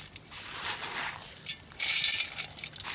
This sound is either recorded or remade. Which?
recorded